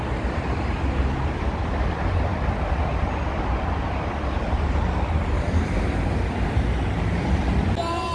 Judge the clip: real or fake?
real